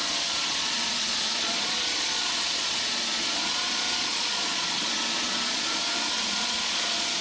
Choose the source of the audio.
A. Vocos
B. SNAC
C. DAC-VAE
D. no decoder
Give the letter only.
A